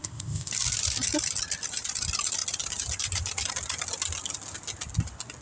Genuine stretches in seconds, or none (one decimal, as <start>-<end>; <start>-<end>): 0.5-5.4